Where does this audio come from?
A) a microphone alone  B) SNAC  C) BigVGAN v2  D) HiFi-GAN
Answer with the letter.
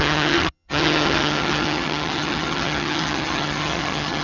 D